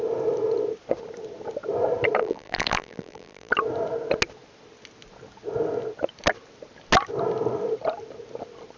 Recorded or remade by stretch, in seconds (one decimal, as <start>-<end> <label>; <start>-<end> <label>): 0.0-2.2 recorded; 2.2-3.5 remade; 3.5-8.8 recorded